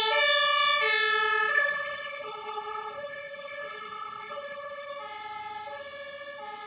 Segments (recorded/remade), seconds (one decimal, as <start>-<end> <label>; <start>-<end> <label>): 0.0-1.5 recorded; 1.5-4.9 remade; 4.9-6.7 recorded